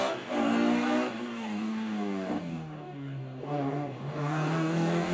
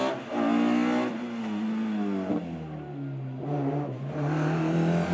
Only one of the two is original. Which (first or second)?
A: second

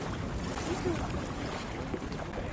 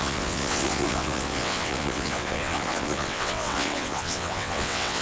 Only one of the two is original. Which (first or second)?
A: first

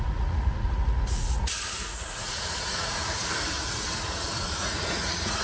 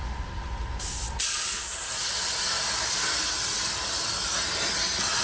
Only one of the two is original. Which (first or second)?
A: second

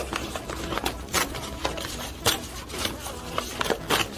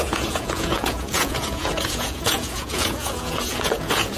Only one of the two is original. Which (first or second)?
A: first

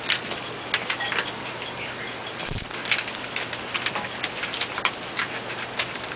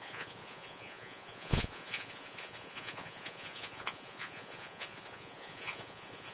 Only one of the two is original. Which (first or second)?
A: first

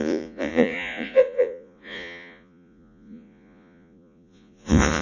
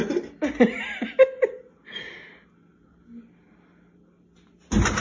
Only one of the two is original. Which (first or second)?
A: second